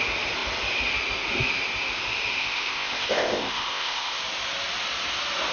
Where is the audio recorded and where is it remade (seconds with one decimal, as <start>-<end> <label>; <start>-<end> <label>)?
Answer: 0.0-2.4 recorded; 2.4-4.2 remade; 4.2-5.5 recorded